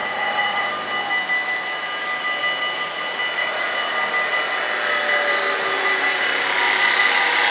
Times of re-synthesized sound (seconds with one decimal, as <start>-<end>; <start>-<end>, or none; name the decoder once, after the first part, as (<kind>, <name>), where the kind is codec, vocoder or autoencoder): 0.0-0.7 (vocoder, Vocos); 3.4-3.9